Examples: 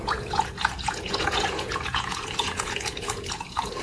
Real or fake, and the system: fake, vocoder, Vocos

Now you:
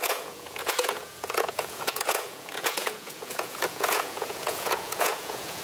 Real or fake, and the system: fake, vocoder, Vocos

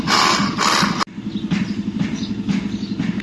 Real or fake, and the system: real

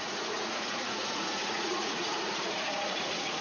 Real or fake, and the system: fake, vocoder, Vocos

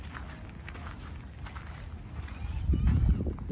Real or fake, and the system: real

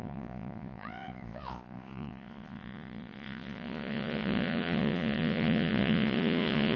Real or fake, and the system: fake, vocoder, Vocos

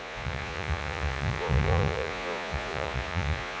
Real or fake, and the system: fake, vocoder, Vocos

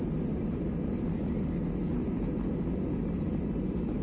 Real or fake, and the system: real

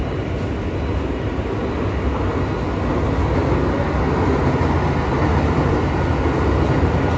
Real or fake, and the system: real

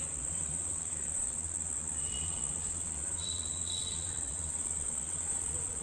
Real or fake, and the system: fake, vocoder, Vocos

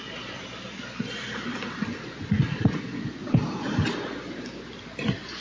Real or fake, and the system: real